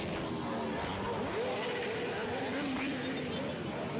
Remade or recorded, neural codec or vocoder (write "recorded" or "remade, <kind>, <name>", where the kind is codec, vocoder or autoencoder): recorded